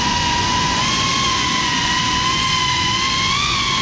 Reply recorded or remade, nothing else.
remade